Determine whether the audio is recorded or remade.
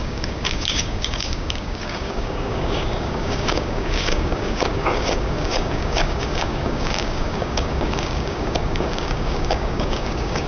remade